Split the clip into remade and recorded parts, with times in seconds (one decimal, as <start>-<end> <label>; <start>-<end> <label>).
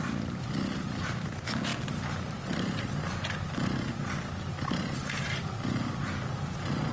0.0-1.7 recorded; 1.7-5.7 remade; 5.7-6.9 recorded